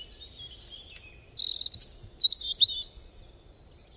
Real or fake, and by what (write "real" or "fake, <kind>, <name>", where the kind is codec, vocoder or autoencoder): real